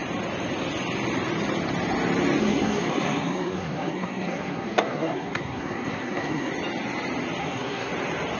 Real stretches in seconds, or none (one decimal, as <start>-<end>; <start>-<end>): 0.0-2.4; 6.5-7.4; 7.9-8.4